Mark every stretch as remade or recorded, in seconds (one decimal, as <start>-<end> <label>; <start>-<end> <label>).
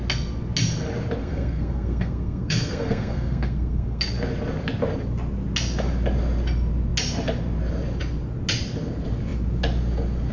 0.0-1.2 recorded; 1.2-4.0 remade; 4.0-10.3 recorded